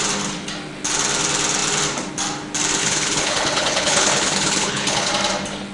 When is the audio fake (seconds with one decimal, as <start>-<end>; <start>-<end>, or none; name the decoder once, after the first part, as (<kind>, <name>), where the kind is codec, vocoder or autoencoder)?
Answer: 2.8-5.1 (codec, HILCodec)